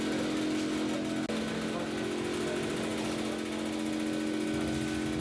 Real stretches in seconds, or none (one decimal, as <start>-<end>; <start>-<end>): 0.0-5.2